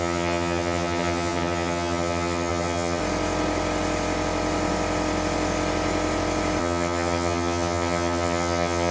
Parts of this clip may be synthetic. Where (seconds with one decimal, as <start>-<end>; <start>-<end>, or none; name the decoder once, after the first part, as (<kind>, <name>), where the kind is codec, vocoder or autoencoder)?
0.0-3.0 (vocoder, HiFi-GAN); 6.6-8.9